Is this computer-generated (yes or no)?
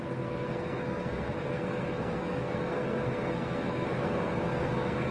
yes